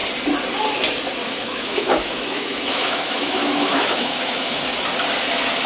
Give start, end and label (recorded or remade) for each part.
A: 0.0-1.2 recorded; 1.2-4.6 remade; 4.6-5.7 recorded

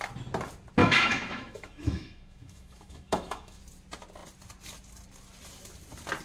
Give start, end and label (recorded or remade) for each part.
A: 0.0-0.8 recorded; 0.8-3.6 remade; 3.6-6.2 recorded

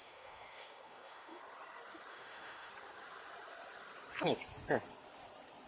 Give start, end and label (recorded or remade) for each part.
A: 0.0-1.4 remade; 1.4-2.1 recorded; 2.1-2.7 remade; 2.7-5.7 recorded

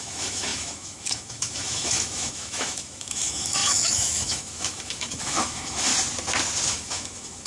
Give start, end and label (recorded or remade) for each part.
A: 0.0-5.9 remade; 5.9-6.7 recorded; 6.7-7.5 remade